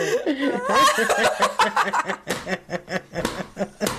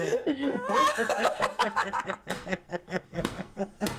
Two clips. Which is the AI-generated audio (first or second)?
second